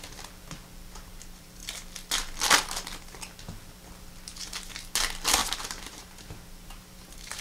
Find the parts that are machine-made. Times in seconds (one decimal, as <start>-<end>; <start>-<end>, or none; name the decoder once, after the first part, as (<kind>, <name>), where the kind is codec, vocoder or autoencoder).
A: 5.4-7.4 (vocoder, BigVGAN v2)

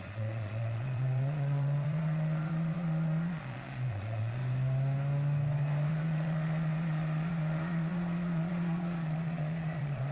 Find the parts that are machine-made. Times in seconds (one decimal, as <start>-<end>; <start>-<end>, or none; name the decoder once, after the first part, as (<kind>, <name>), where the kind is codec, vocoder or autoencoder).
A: 0.0-4.4 (vocoder, Vocos); 5.9-10.1

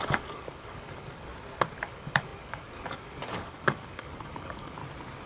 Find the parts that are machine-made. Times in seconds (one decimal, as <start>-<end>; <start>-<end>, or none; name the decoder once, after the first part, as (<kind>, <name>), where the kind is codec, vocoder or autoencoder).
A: 0.0-1.3 (codec, DAC); 1.8-4.8

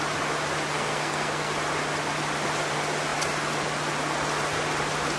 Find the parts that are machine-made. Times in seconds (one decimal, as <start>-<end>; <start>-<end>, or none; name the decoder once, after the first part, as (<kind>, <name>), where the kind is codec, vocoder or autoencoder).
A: 0.7-1.5 (codec, SNAC)

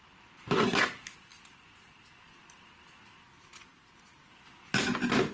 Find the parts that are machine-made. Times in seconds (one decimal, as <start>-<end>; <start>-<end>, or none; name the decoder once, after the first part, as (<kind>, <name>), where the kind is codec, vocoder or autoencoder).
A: none

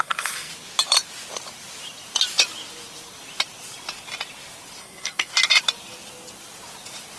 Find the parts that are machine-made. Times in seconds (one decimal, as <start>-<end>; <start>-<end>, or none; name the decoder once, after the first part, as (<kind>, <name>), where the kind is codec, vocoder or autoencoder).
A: 0.0-0.5 (codec, SNAC); 4.8-5.3

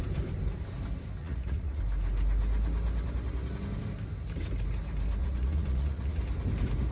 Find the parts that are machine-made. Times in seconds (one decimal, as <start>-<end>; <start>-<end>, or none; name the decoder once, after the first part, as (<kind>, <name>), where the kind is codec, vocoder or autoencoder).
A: 1.2-1.8 (vocoder, Vocos); 5.2-6.2